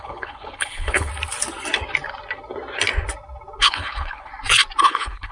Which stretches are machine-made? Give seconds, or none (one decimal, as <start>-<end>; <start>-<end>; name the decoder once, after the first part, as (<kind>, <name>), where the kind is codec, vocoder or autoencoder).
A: 0.0-1.1 (codec, HILCodec); 3.6-4.3; 4.8-5.3